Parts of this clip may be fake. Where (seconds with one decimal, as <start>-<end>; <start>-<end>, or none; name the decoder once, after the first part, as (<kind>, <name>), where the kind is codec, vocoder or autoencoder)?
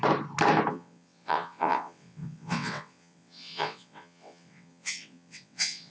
0.7-5.9 (vocoder, WaveNeXt)